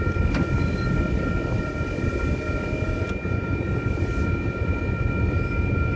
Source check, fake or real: real